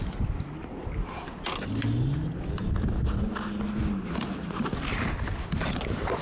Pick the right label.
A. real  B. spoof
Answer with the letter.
A